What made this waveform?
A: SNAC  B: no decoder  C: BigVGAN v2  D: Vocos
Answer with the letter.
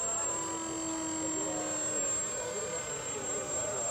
B